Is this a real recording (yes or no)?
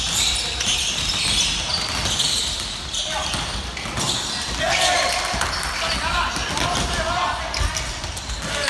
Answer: yes